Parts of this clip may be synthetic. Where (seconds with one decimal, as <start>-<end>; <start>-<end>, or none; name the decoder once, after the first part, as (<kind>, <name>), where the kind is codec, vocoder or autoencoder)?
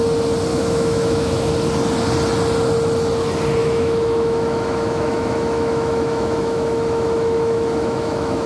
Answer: 0.5-1.5 (autoencoder, DAC-VAE); 3.6-8.5